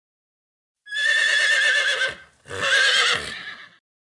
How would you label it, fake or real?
real